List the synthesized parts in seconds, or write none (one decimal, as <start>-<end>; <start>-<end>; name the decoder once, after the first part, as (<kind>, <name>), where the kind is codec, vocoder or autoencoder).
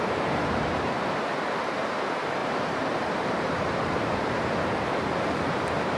0.0-6.0 (vocoder, BigVGAN v2)